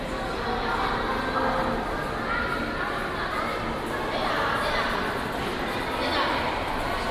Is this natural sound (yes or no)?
yes